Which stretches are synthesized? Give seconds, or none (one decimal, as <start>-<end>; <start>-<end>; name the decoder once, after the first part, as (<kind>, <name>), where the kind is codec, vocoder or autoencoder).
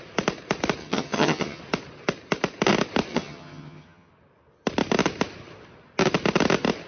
0.8-1.6 (vocoder, HiFi-GAN); 3.1-4.1